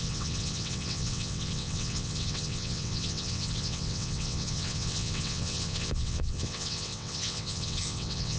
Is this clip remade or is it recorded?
remade